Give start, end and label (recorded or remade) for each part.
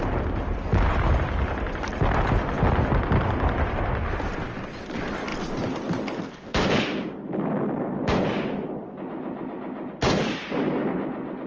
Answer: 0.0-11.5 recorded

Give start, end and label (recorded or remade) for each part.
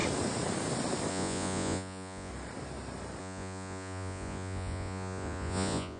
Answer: 0.0-1.1 recorded; 1.1-2.3 remade; 2.3-3.2 recorded; 3.2-6.0 remade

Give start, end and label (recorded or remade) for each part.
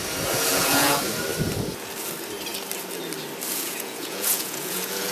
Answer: 0.0-0.5 recorded; 0.5-1.0 remade; 1.0-3.5 recorded; 3.5-5.1 remade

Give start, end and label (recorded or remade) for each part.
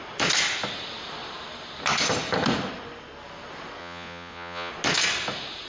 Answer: 0.0-3.8 recorded; 3.8-4.7 remade; 4.7-5.7 recorded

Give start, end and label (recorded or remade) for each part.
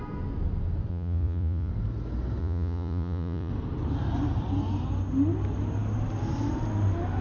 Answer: 0.0-0.9 recorded; 0.9-1.7 remade; 1.7-2.4 recorded; 2.4-3.5 remade; 3.5-7.2 recorded